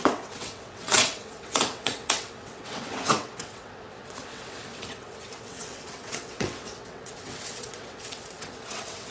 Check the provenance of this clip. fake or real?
fake